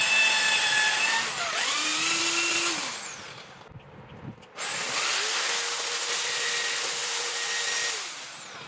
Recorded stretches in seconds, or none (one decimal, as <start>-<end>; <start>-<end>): 0.0-5.9; 6.5-7.0; 7.5-8.7